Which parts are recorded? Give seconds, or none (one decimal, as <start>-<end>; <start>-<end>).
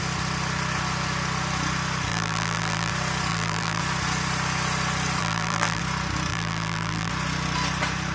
0.0-2.1; 2.9-3.3; 3.8-5.2; 5.8-6.3; 7.1-8.1